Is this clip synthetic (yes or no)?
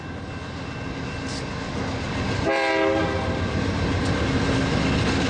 no